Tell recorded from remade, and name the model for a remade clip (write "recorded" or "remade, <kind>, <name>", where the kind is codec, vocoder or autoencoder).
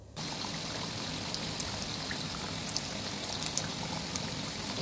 recorded